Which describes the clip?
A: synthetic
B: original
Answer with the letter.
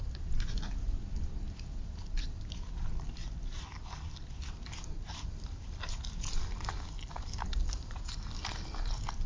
B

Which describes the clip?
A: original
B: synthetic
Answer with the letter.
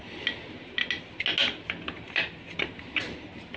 A